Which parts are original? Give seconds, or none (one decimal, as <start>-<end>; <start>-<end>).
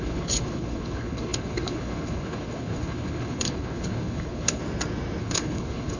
4.6-5.2